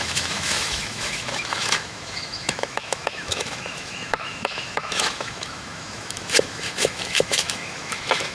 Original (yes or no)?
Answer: no